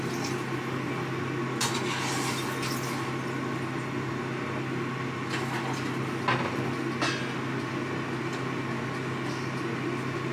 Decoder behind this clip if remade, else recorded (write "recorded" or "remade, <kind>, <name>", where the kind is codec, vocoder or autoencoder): recorded